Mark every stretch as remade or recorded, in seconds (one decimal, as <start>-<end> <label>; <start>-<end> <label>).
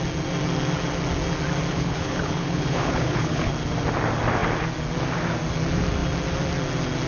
0.0-1.7 recorded; 1.7-3.5 remade; 3.5-7.1 recorded